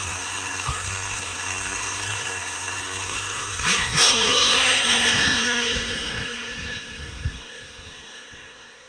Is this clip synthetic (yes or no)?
yes